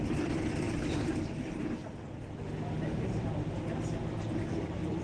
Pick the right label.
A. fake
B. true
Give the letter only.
B